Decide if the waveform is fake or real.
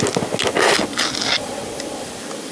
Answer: real